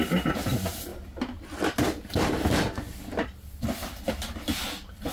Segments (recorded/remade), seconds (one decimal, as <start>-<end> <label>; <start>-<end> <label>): 0.0-5.1 recorded

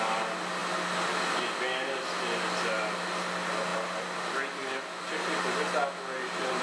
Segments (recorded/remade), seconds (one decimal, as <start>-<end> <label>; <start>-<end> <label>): 0.0-6.6 recorded

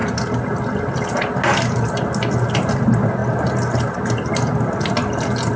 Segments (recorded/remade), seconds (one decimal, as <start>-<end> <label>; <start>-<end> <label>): 0.0-5.6 recorded

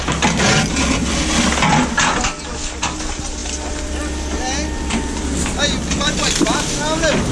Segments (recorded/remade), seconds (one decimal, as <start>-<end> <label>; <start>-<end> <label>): 0.0-7.3 recorded

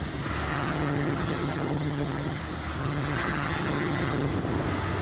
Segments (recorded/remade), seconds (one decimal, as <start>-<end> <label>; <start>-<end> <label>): 0.0-0.5 recorded; 0.5-2.4 remade; 2.4-2.8 recorded; 2.8-4.3 remade; 4.3-5.0 recorded

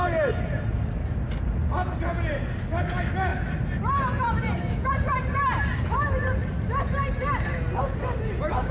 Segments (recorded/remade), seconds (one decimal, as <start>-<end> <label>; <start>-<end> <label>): 0.0-8.7 recorded

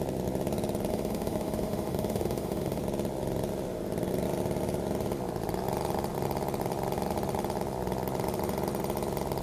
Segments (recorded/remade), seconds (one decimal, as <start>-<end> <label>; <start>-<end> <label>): 0.0-0.9 recorded; 0.9-2.8 remade; 2.8-9.4 recorded